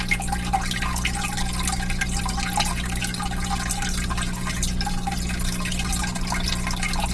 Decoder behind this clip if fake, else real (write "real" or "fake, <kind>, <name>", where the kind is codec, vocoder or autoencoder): real